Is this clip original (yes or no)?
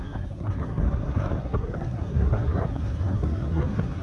no